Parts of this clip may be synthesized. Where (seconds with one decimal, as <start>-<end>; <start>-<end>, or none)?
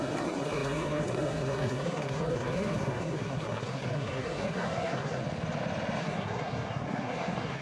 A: 0.0-5.2; 6.0-7.6